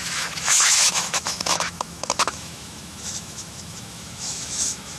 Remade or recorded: remade